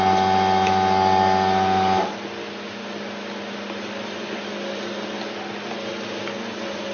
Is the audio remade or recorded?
recorded